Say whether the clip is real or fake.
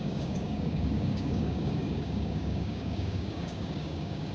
fake